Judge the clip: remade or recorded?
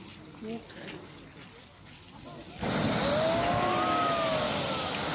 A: recorded